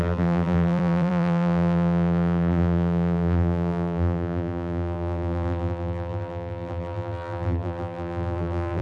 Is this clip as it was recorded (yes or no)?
no